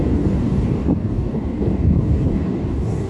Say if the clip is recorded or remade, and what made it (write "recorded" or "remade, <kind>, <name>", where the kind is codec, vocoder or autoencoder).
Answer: remade, codec, DAC